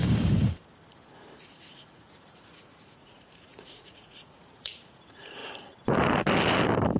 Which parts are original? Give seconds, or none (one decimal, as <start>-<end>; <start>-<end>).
0.0-1.6; 5.4-7.0